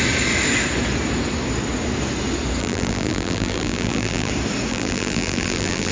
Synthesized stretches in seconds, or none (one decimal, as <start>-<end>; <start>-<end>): 2.6-4.3; 4.7-5.9